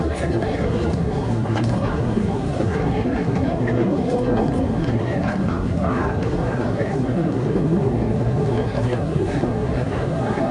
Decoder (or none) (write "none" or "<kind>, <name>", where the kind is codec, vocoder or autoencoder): codec, SNAC